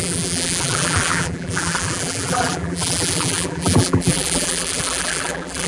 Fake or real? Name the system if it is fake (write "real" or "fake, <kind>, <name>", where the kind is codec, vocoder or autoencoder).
fake, vocoder, BigVGAN v2